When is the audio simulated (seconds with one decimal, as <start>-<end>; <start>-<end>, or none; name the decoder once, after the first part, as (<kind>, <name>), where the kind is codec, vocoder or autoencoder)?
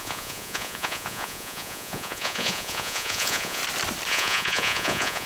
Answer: 0.0-3.6 (vocoder, Vocos); 4.1-5.3